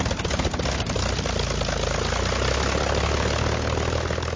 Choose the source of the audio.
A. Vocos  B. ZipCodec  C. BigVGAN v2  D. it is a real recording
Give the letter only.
D